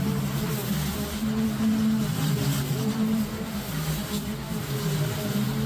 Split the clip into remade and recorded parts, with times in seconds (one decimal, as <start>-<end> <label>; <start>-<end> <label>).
0.0-5.7 recorded